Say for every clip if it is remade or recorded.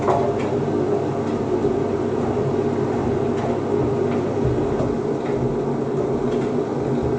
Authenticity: recorded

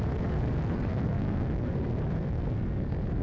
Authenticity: remade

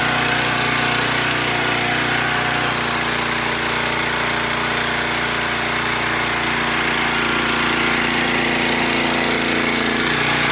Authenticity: recorded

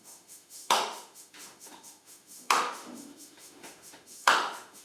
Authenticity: remade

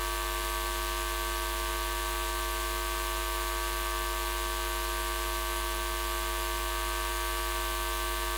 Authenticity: recorded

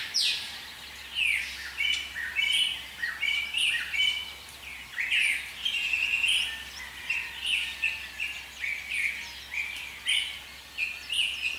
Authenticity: recorded